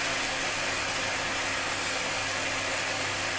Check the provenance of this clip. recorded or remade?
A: recorded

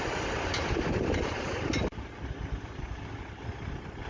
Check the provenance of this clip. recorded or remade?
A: recorded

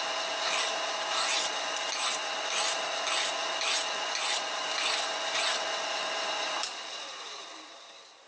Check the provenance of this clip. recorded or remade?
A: recorded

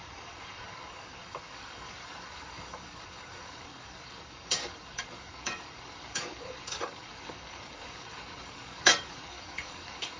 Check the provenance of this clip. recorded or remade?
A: remade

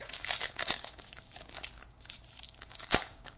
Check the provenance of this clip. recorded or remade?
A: remade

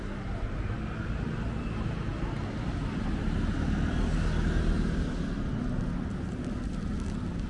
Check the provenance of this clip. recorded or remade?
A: recorded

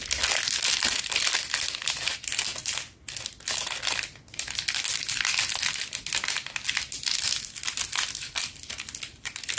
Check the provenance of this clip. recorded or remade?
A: recorded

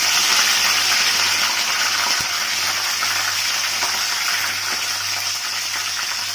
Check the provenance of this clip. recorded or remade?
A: recorded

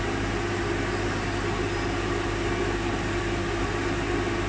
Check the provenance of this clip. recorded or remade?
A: recorded